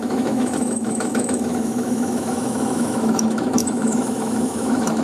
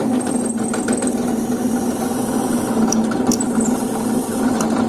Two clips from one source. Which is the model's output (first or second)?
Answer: first